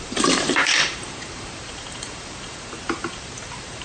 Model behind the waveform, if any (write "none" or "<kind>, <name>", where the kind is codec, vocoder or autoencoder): vocoder, BigVGAN v2